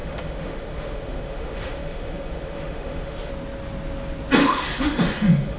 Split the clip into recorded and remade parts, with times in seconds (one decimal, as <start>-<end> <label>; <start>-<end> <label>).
0.0-3.3 remade; 3.3-4.4 recorded; 4.4-5.6 remade